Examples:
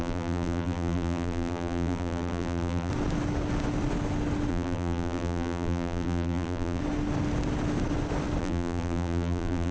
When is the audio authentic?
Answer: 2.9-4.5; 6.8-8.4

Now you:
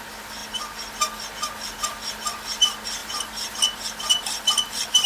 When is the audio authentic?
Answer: 0.0-5.1

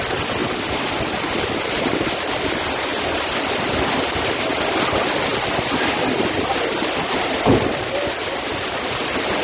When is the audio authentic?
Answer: 0.0-2.9; 3.7-5.3; 7.3-9.4